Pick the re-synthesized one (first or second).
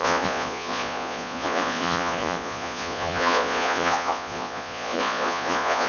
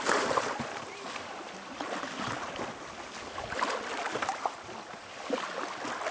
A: first